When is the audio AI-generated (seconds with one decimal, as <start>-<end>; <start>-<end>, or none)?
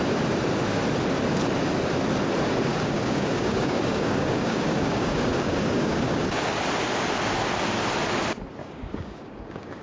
2.7-6.6; 8.6-9.8